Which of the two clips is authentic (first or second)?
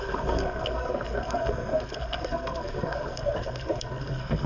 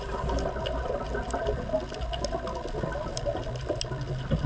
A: second